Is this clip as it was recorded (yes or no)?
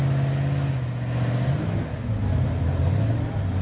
yes